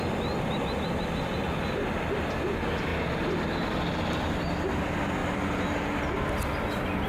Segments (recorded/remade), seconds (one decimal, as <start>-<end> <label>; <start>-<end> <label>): 0.0-7.1 recorded